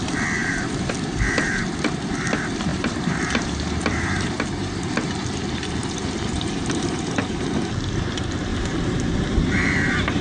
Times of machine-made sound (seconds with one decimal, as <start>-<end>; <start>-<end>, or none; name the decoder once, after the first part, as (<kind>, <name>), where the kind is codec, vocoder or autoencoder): 0.4-1.6 (vocoder, BigVGAN v2); 2.7-5.2; 5.8-7.5; 8.5-10.2